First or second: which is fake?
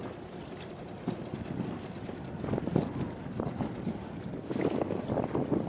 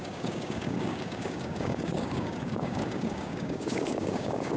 second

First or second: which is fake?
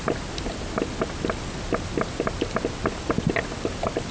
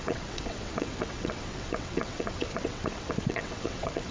second